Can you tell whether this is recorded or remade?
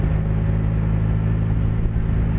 recorded